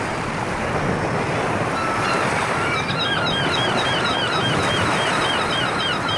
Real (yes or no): no